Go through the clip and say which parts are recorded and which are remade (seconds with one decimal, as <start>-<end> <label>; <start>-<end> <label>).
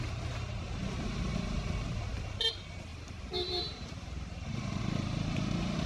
0.0-2.9 recorded; 2.9-4.8 remade; 4.8-5.9 recorded